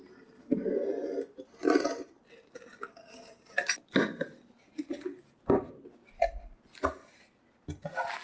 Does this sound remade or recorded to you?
recorded